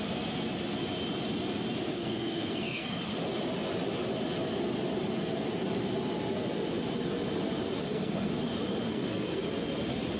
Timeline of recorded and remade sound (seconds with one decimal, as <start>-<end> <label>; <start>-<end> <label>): 0.0-1.9 recorded; 1.9-3.0 remade; 3.0-7.8 recorded; 7.8-8.3 remade; 8.3-8.9 recorded; 8.9-9.4 remade; 9.4-10.2 recorded